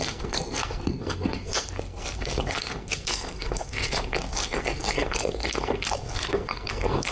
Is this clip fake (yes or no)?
yes